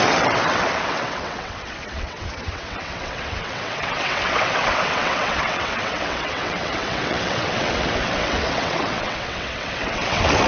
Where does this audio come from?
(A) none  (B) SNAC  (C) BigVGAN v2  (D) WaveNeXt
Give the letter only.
D